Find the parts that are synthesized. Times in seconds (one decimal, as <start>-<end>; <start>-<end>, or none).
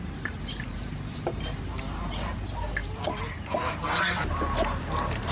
0.0-2.3; 4.3-5.3